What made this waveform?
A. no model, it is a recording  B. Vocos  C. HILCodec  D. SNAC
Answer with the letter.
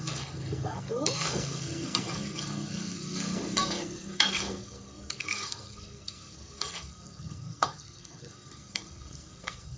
D